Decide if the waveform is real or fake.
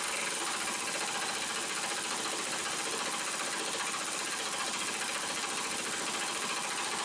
real